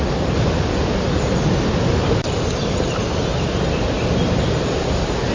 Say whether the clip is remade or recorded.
recorded